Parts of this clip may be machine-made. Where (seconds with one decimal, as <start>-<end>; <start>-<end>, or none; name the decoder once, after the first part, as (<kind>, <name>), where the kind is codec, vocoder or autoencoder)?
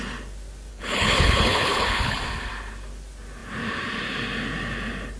0.7-2.2 (codec, HILCodec)